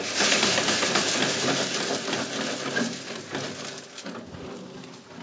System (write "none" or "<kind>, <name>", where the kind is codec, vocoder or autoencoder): none